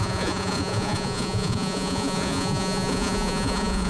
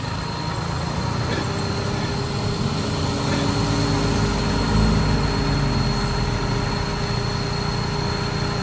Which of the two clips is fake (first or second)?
first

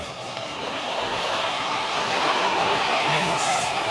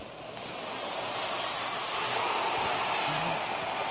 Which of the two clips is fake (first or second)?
first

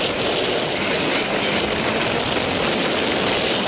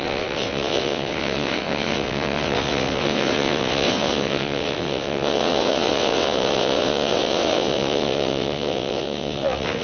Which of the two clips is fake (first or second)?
second